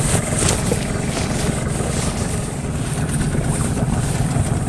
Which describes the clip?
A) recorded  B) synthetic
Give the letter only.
A